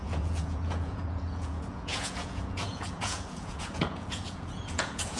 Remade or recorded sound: remade